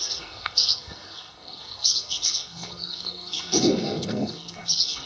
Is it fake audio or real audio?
fake